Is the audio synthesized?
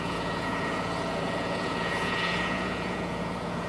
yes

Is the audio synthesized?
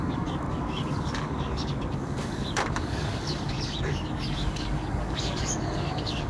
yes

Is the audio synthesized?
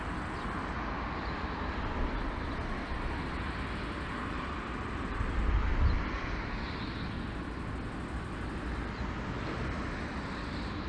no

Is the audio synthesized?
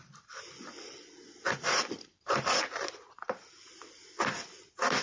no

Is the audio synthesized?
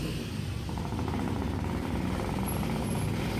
no